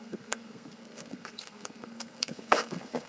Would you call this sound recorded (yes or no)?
no